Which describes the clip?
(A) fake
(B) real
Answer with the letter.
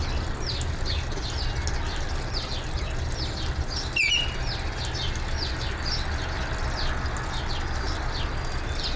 B